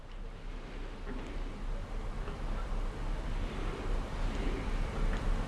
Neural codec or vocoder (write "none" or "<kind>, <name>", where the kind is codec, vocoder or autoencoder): none